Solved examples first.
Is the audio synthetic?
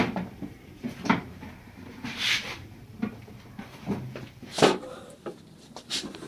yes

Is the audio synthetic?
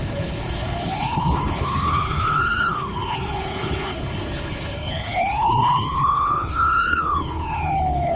yes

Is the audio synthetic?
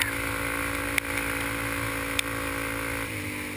no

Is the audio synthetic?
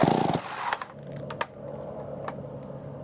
no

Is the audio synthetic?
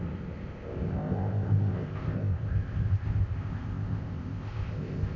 yes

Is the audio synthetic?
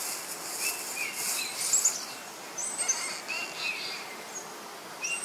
no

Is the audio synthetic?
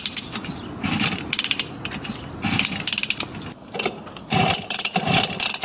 no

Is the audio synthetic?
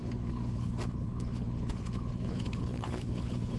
yes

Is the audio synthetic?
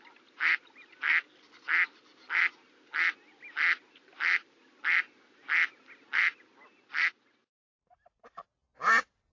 no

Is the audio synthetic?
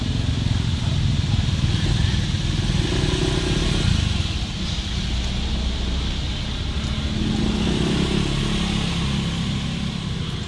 no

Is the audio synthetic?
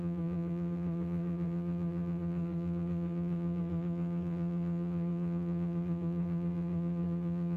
yes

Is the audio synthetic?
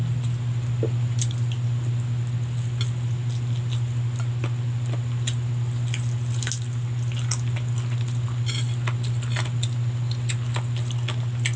no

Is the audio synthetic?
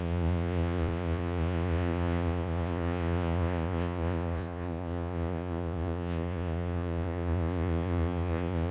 yes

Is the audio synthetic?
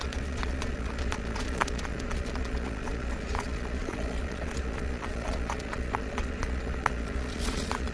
yes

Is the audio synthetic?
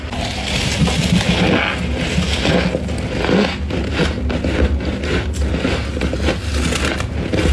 no